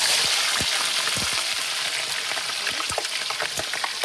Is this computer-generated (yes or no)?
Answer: no